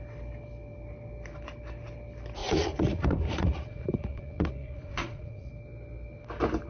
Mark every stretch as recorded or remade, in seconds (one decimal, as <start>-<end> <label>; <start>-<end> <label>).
0.0-2.4 recorded; 2.4-5.5 remade; 5.5-6.7 recorded